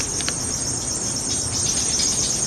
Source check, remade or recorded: remade